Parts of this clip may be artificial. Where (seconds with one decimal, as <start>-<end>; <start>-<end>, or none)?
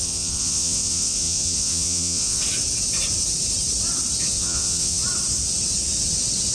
0.0-2.4; 4.3-5.0